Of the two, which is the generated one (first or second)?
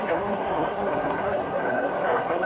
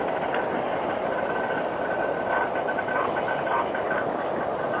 first